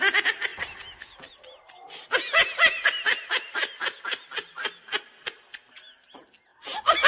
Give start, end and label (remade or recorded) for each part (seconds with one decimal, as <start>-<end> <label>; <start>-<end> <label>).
0.0-7.1 recorded